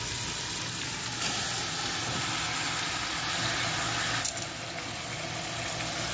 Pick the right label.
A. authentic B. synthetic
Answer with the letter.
A